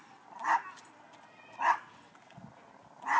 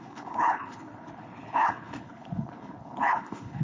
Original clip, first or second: first